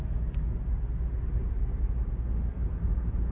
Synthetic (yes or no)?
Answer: no